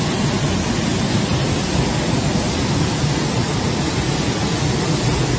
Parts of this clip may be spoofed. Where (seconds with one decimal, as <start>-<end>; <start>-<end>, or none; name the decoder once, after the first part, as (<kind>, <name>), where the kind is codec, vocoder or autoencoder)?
none